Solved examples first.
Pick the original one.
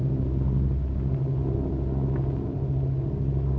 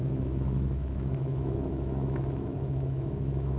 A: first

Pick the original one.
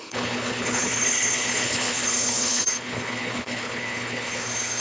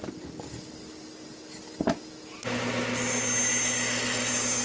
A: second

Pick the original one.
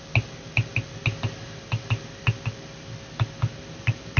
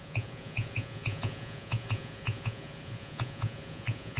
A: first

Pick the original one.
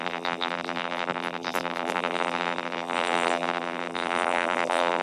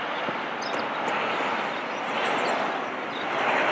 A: second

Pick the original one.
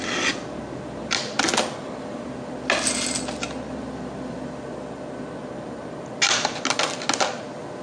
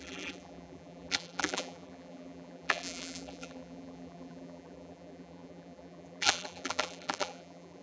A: first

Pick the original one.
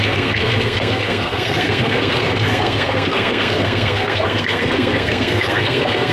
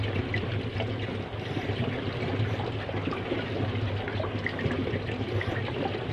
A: second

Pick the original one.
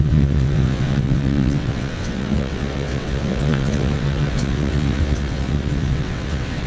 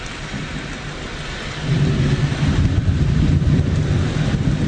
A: second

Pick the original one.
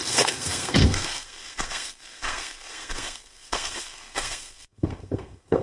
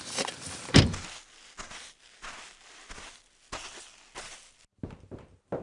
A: second